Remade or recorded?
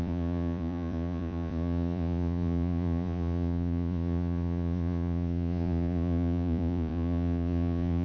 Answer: remade